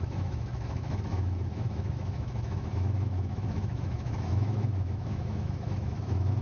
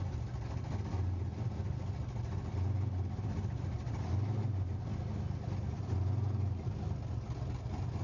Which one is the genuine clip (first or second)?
second